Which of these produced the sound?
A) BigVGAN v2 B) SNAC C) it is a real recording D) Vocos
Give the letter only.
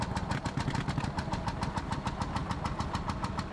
C